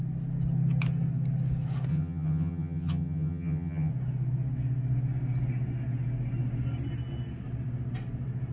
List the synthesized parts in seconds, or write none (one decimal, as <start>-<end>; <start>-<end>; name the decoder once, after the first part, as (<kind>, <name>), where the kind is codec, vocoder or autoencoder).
1.9-3.9 (vocoder, HiFi-GAN)